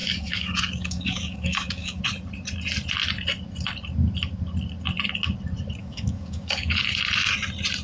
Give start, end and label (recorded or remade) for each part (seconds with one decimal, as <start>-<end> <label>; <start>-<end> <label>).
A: 0.0-2.0 remade; 2.0-5.8 recorded; 5.8-6.8 remade; 6.8-7.8 recorded